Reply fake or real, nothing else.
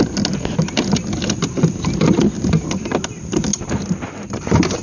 real